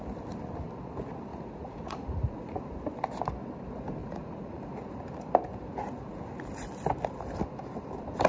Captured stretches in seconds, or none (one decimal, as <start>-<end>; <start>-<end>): 0.0-1.3; 2.6-4.0; 4.7-8.3